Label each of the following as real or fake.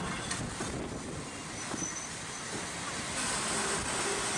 real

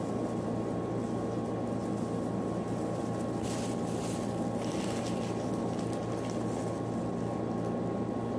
real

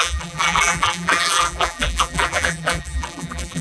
fake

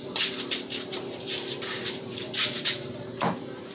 fake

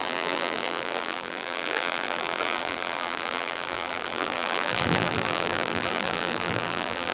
fake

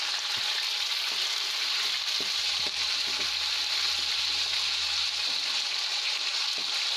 real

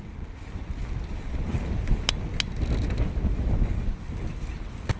real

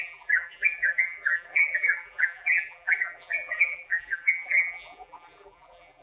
fake